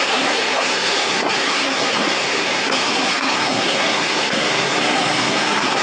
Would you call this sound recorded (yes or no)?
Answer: no